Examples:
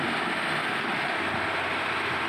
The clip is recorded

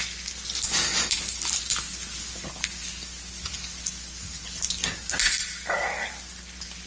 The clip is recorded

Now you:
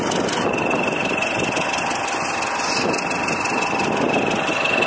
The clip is recorded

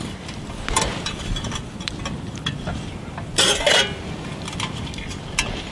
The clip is recorded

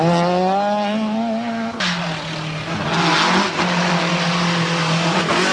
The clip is recorded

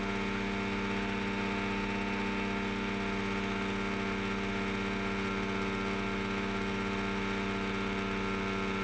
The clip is recorded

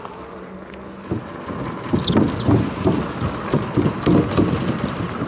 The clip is recorded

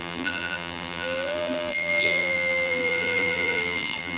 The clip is remade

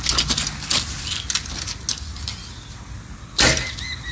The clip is recorded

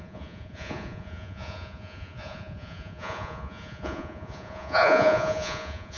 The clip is remade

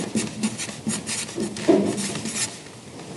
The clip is recorded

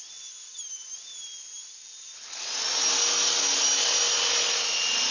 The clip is recorded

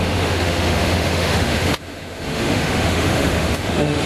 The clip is remade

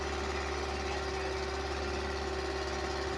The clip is recorded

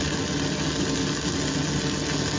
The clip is recorded